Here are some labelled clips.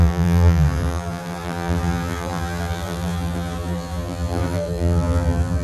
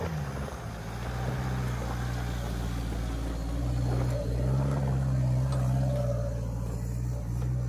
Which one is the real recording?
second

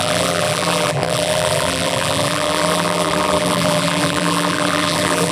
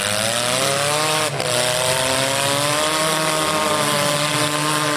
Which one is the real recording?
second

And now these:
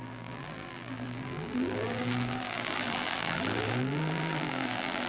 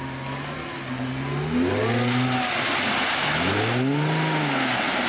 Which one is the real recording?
second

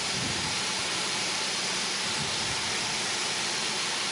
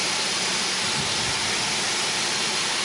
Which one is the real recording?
second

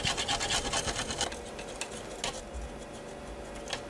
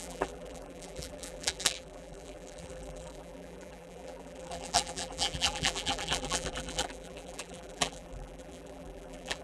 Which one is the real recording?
first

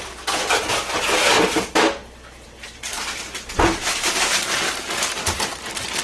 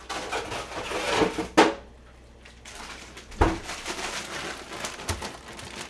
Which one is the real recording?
second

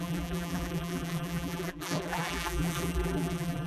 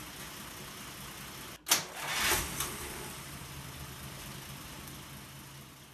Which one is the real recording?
second